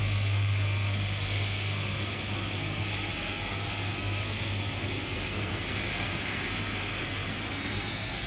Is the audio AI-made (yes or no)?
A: yes